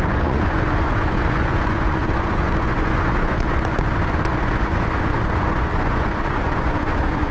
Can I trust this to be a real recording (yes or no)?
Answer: no